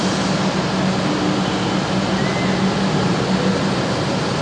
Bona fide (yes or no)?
yes